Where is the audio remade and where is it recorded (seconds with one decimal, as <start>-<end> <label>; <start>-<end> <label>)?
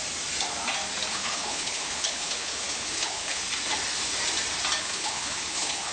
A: 0.0-1.1 recorded; 1.1-3.4 remade; 3.4-4.8 recorded; 4.8-5.9 remade